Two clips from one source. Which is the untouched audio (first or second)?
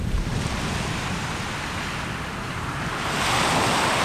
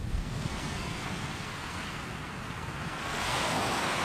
first